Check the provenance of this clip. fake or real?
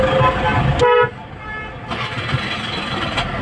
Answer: real